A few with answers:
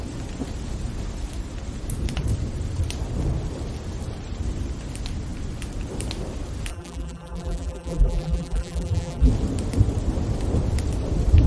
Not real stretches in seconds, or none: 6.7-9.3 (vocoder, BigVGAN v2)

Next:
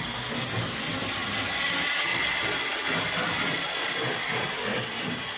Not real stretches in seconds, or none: 2.1-5.4 (vocoder, BigVGAN v2)

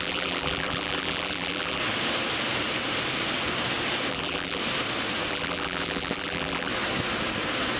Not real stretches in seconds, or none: 0.0-1.8 (vocoder, BigVGAN v2); 4.1-4.6; 5.3-6.7